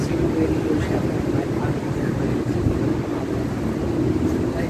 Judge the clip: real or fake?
real